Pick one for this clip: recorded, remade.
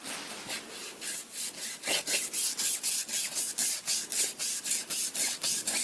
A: recorded